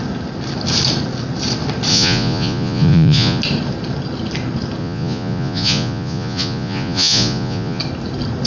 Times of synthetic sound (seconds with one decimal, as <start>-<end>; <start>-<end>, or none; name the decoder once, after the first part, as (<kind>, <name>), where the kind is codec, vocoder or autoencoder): 1.9-3.4 (vocoder, Vocos); 4.8-7.8